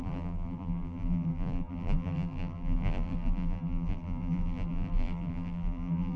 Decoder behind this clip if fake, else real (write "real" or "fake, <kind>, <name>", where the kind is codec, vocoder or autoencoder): fake, vocoder, BigVGAN v2